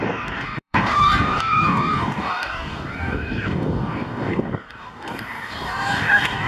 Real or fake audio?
fake